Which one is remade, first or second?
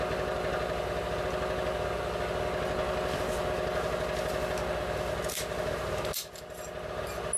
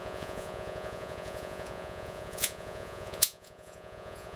second